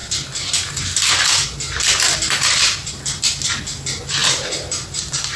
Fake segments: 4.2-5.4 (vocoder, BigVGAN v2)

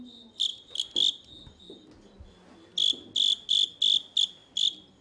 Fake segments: 4.4-5.0 (vocoder, BigVGAN v2)

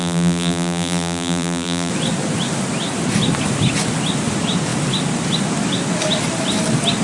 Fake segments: 0.0-1.9 (vocoder, BigVGAN v2)

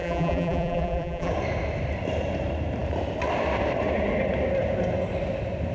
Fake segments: 0.0-1.3 (vocoder, BigVGAN v2)

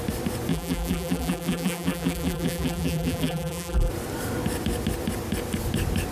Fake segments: 0.5-3.9 (vocoder, BigVGAN v2)

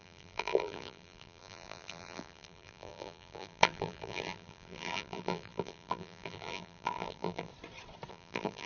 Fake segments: 0.0-7.5 (vocoder, BigVGAN v2); 8.1-8.7

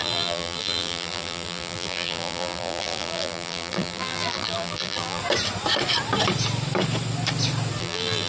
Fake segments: 0.0-5.2 (vocoder, BigVGAN v2); 7.8-8.3